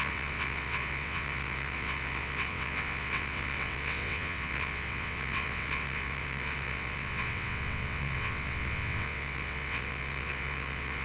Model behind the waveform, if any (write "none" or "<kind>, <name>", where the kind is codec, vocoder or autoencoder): vocoder, WaveNeXt